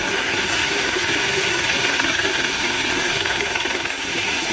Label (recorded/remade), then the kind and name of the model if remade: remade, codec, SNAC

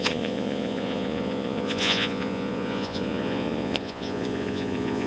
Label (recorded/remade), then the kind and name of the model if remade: remade, vocoder, Vocos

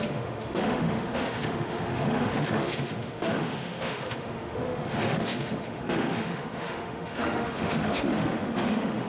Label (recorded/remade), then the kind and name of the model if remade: remade, autoencoder, DAC-VAE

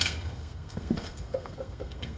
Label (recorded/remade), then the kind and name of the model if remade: remade, codec, SNAC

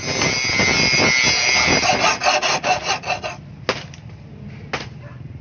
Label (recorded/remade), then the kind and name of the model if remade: recorded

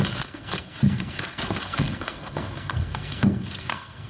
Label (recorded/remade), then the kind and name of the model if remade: remade, codec, SNAC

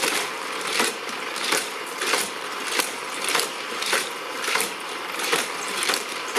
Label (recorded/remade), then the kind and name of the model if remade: remade, vocoder, BigVGAN v2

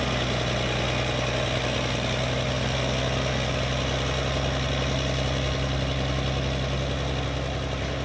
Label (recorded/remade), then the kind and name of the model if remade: recorded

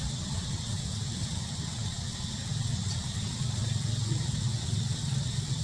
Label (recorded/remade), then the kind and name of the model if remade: remade, vocoder, WaveNeXt